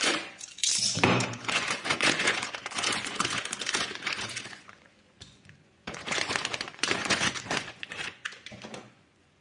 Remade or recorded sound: remade